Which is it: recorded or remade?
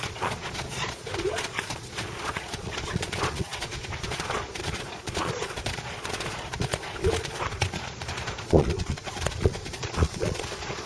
remade